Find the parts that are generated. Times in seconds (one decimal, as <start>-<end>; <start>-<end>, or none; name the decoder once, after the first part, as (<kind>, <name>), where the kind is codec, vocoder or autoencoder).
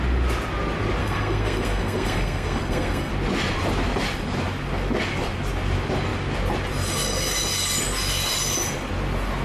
1.0-3.1 (codec, SNAC)